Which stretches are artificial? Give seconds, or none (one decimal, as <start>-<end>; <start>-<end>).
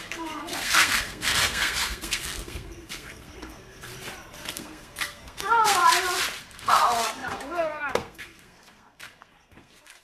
0.0-3.9; 4.5-5.8; 6.4-10.0